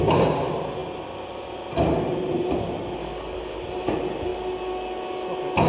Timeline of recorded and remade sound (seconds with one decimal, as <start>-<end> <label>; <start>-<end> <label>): 0.0-3.0 recorded; 3.0-3.6 remade; 3.6-5.7 recorded